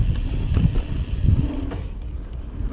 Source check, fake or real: real